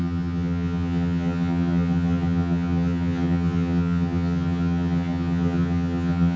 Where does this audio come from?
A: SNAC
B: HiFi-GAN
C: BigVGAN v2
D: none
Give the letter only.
B